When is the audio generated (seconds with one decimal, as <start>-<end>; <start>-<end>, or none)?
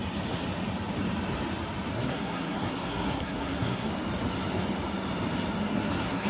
1.9-3.9; 5.6-6.3